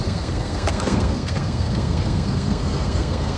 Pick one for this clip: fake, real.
fake